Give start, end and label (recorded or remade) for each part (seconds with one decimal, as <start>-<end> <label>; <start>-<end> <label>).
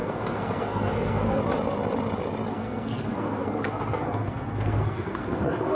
0.0-1.4 remade; 1.4-2.5 recorded; 2.5-5.8 remade